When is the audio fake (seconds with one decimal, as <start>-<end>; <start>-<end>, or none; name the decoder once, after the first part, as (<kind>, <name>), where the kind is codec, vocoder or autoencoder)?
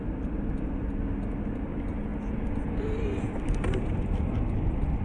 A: none